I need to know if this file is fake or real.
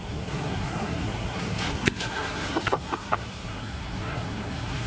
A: fake